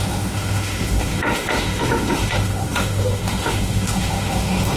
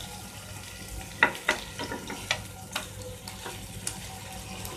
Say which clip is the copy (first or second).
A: first